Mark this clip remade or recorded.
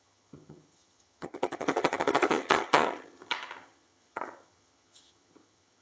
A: remade